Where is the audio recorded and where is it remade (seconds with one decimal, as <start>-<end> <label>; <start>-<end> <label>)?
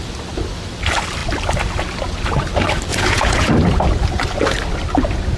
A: 0.0-2.9 recorded; 2.9-3.5 remade; 3.5-5.4 recorded